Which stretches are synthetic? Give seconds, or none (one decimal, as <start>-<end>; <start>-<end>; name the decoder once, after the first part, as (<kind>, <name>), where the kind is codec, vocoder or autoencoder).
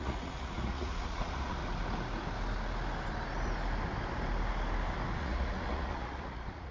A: 0.0-1.6 (vocoder, Vocos); 5.2-6.7